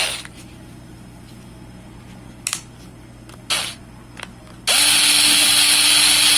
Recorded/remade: recorded